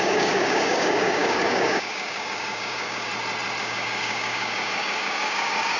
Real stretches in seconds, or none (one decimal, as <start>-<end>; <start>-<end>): 3.1-3.6